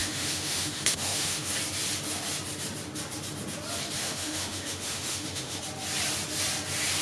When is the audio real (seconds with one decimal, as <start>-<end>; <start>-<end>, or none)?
1.5-4.0; 5.6-7.0